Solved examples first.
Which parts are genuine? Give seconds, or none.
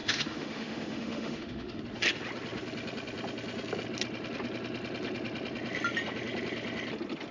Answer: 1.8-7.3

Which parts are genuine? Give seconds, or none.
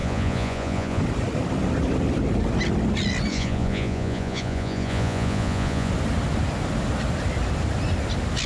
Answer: 1.0-3.3; 5.9-8.5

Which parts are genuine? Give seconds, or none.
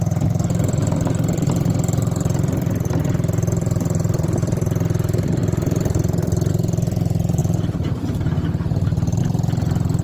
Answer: 5.4-6.5; 7.4-9.2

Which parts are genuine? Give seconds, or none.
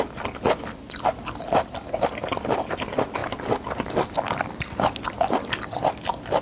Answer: 0.0-6.4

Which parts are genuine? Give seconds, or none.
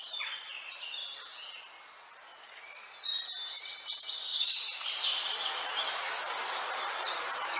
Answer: 0.0-4.3; 6.8-7.6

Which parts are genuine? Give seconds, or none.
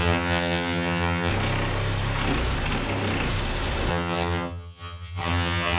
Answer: 1.3-3.9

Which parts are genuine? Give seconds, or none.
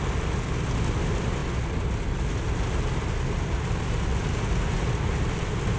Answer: 0.0-5.8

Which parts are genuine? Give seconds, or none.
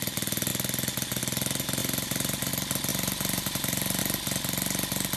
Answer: 0.0-1.8; 2.5-2.9; 4.0-5.2